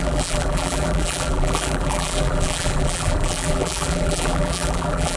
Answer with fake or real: fake